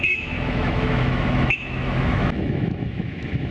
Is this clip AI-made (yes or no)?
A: yes